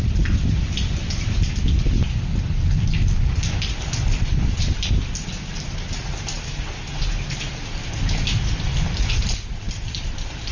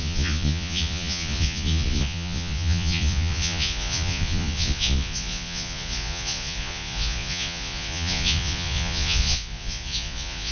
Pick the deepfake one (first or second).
second